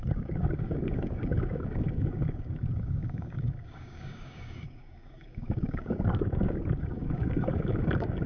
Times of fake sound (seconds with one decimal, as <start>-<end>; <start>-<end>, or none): 0.0-8.3